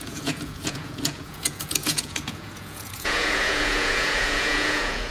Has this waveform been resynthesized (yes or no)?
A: yes